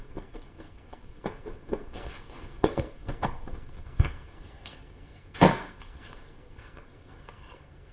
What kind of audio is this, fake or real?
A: fake